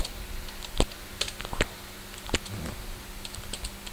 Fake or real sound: real